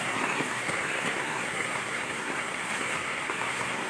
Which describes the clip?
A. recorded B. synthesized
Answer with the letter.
B